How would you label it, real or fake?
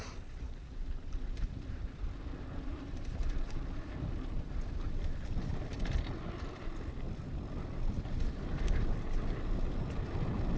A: real